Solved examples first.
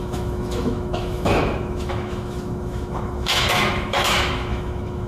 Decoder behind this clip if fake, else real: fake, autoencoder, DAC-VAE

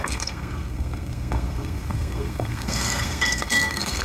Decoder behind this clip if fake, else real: fake, codec, SNAC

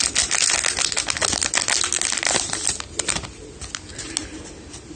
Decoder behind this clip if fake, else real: real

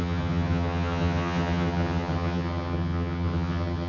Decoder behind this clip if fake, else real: fake, vocoder, HiFi-GAN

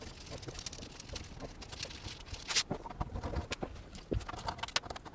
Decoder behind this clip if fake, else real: real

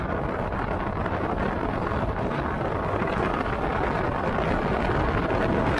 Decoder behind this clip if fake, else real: real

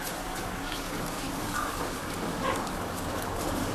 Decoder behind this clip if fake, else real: fake, codec, DAC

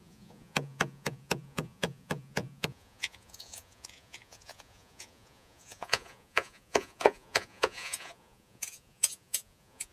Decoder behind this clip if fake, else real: fake, vocoder, Vocos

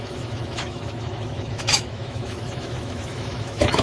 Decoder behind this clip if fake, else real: fake, autoencoder, DAC-VAE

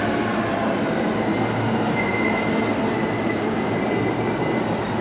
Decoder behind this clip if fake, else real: real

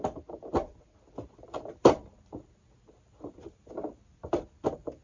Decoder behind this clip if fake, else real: real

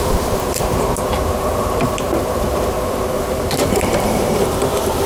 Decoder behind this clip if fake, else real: fake, vocoder, BigVGAN v2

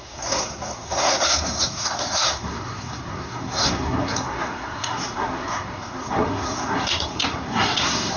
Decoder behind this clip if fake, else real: fake, codec, SNAC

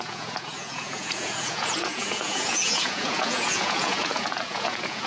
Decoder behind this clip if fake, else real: fake, vocoder, Vocos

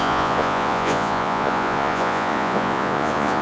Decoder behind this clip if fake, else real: fake, vocoder, Vocos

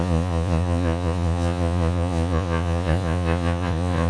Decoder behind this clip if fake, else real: fake, vocoder, Vocos